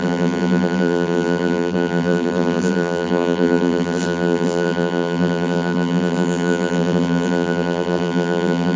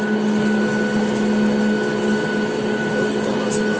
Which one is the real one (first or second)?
second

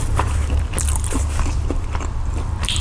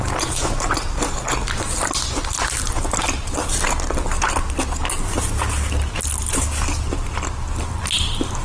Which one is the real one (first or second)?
second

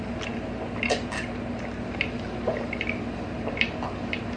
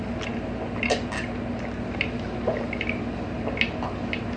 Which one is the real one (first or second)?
second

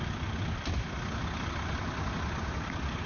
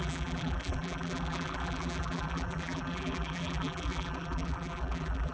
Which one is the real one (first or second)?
first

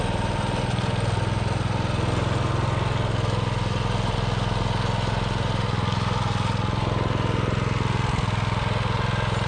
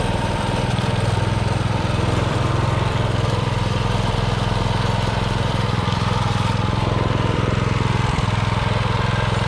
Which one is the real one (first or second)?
first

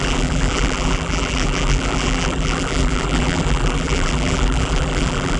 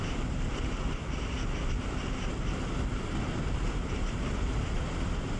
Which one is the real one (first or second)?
second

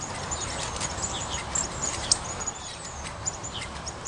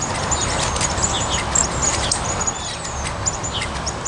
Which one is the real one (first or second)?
second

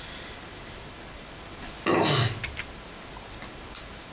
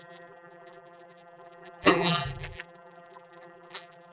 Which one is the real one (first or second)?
first